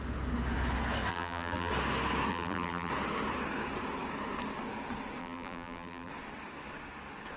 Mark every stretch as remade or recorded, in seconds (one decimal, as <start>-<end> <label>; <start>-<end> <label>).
0.0-1.1 recorded; 1.1-1.7 remade; 1.7-2.3 recorded; 2.3-2.9 remade; 2.9-5.2 recorded; 5.2-6.1 remade; 6.1-7.4 recorded

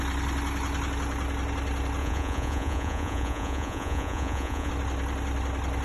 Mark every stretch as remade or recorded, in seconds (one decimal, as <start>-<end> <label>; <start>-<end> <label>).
0.0-2.0 recorded; 2.0-4.7 remade; 4.7-5.8 recorded

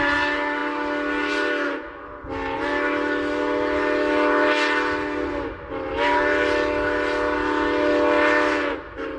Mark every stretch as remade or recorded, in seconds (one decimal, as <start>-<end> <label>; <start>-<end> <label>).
0.0-9.2 recorded

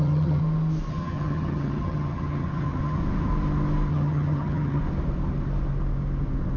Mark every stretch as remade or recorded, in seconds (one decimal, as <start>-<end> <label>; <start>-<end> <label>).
0.0-0.4 remade; 0.4-0.9 recorded; 0.9-3.0 remade; 3.0-3.9 recorded; 3.9-4.8 remade; 4.8-6.6 recorded

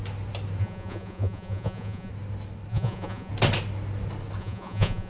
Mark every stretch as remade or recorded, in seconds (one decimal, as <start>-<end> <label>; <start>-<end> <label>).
0.0-0.6 recorded; 0.6-2.1 remade; 2.1-2.7 recorded; 2.7-3.3 remade; 3.3-4.4 recorded; 4.4-5.1 remade